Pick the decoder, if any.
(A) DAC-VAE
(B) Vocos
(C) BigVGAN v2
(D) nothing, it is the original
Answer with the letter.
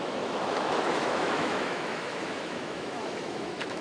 A